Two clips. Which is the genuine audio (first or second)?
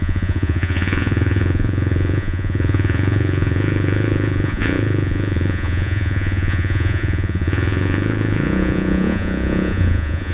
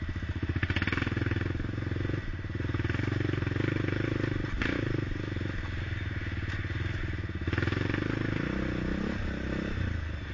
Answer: second